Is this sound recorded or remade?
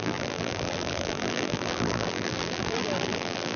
remade